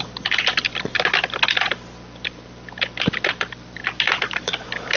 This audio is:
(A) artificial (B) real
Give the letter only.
B